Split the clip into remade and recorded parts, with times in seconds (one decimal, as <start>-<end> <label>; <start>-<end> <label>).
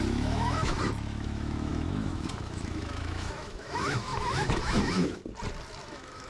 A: 0.0-5.2 remade; 5.2-5.8 recorded; 5.8-6.3 remade